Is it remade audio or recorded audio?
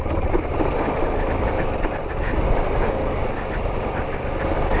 recorded